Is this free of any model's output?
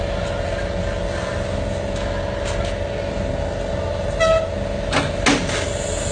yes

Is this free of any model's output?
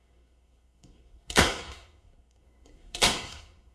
no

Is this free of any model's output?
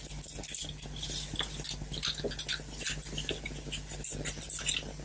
yes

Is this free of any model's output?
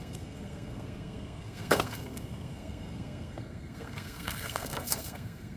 no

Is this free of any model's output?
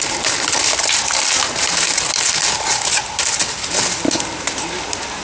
yes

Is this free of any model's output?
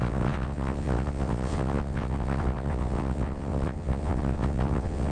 no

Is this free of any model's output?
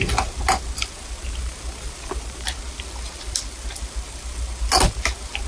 yes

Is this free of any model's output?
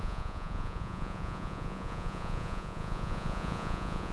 no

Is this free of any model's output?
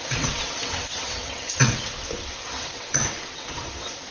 no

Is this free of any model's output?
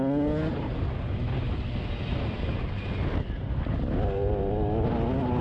yes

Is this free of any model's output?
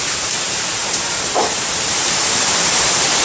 no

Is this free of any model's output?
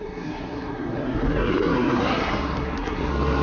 no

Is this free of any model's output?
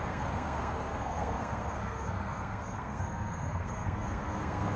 no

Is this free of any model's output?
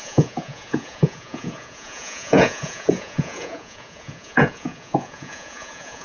no